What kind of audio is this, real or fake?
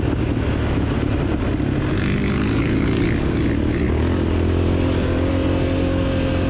real